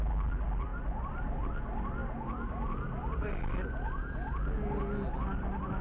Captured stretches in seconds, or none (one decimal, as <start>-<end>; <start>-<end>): 0.0-5.8

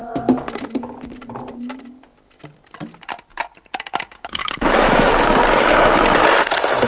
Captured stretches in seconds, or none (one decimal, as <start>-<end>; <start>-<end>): 0.0-4.4; 5.1-6.9

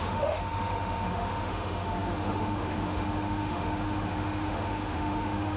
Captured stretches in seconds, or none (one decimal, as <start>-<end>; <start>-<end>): none

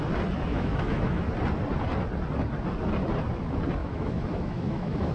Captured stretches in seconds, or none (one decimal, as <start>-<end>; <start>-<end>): 0.0-0.5; 1.2-3.8